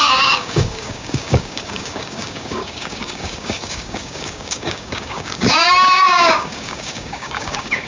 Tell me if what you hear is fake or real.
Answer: fake